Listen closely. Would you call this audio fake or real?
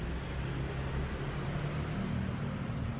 real